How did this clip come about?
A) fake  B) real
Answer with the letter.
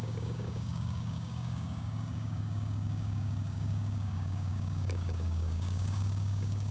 A